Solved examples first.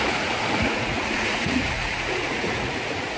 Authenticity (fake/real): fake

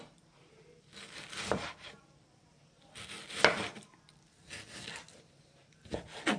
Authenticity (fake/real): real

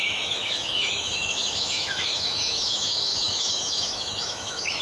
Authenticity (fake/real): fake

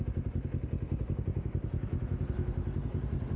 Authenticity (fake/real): real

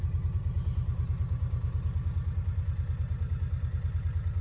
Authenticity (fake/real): real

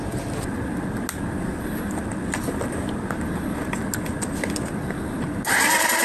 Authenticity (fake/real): real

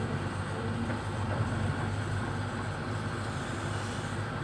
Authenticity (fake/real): fake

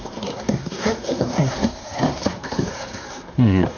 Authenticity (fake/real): fake